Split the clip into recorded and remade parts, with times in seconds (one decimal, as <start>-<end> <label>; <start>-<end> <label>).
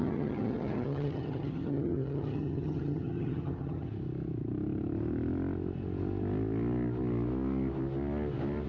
0.0-3.9 remade; 3.9-8.7 recorded